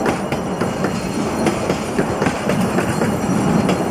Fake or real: real